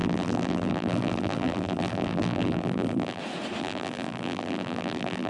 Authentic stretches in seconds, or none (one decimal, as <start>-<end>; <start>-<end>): 3.2-3.6